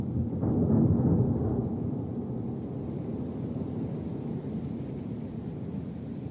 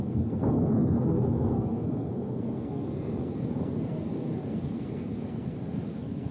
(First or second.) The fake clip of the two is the second